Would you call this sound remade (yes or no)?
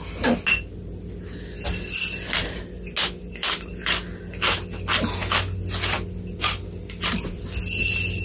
no